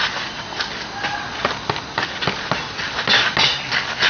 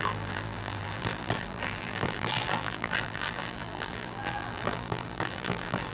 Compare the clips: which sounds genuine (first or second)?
first